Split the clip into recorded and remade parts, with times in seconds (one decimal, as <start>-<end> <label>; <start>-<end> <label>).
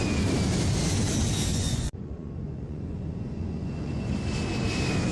0.0-1.5 recorded; 1.5-4.1 remade; 4.1-5.1 recorded